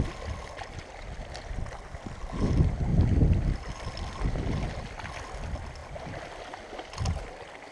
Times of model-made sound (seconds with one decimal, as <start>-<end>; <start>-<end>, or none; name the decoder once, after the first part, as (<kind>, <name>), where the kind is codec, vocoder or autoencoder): none